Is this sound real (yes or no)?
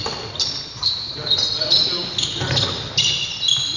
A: yes